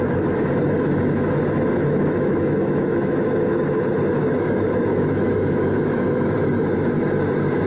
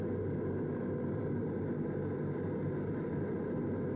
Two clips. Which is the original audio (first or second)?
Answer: second